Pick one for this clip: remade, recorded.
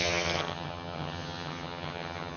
remade